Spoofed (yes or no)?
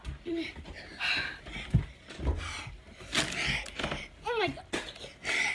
no